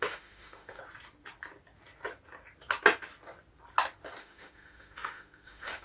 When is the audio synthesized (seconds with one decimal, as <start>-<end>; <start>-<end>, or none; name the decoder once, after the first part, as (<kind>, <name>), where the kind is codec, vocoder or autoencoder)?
0.0-0.8 (autoencoder, DAC-VAE); 4.2-5.8